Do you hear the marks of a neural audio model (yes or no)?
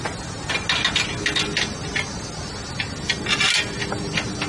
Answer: no